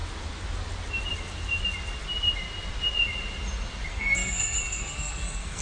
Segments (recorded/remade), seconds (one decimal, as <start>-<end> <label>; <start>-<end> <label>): 0.0-3.9 recorded; 3.9-5.6 remade